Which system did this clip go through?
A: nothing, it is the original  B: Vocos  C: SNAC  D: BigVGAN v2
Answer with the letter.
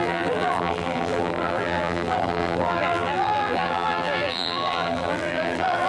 D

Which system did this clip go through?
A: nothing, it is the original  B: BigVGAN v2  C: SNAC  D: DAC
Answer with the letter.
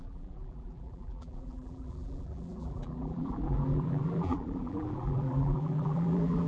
B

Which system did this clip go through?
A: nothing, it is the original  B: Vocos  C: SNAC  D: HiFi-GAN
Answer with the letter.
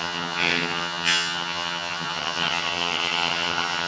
D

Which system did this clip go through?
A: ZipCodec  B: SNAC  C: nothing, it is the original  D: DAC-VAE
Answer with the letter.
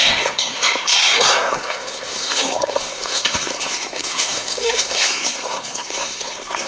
B